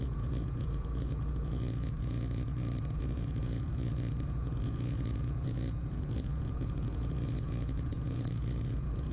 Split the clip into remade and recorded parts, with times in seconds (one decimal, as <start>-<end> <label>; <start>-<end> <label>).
0.0-9.1 remade